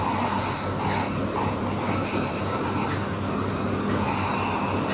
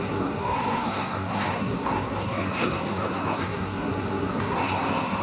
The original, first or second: first